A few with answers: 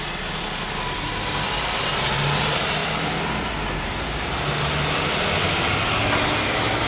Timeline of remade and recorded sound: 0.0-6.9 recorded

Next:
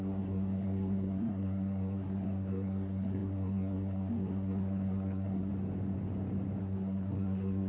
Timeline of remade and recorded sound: 0.0-5.5 remade; 5.5-6.6 recorded; 6.6-7.7 remade

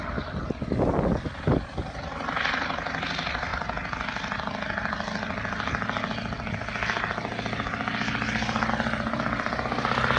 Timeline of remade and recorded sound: 0.0-10.2 recorded

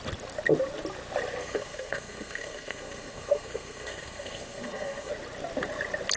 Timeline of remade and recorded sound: 0.0-1.4 recorded; 1.4-5.1 remade; 5.1-6.2 recorded

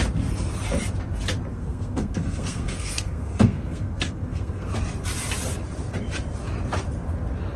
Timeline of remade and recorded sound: 0.0-1.5 recorded; 1.5-4.7 remade; 4.7-7.6 recorded

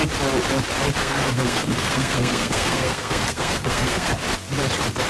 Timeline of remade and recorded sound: 0.0-1.0 recorded; 1.0-4.1 remade; 4.1-5.1 recorded